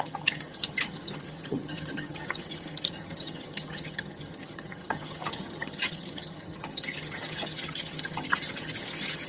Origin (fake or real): fake